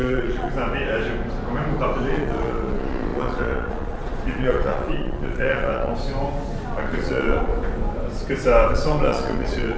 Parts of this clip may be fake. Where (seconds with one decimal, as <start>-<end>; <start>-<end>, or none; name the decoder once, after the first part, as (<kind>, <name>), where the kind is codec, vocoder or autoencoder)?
0.0-0.5 (vocoder, Vocos); 2.1-5.9; 6.7-7.5; 8.7-9.8